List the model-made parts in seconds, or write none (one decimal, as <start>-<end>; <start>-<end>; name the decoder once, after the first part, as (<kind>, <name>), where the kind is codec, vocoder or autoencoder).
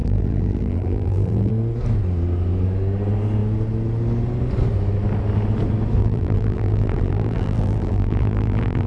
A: 0.0-1.5 (vocoder, BigVGAN v2); 6.0-8.9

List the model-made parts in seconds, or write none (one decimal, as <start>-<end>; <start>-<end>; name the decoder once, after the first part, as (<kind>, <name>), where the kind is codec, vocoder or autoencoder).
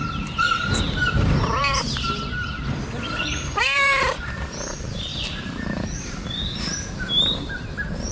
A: 0.0-1.6 (vocoder, BigVGAN v2); 3.1-8.1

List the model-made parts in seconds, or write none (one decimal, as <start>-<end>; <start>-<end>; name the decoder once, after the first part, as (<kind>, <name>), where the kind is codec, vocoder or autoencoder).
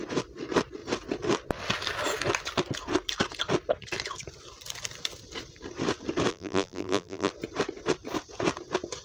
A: 6.3-7.3 (vocoder, BigVGAN v2)